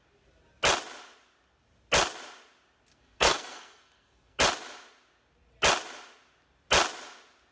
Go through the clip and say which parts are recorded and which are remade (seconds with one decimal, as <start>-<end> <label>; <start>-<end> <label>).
0.0-2.9 recorded; 2.9-4.4 remade; 4.4-7.5 recorded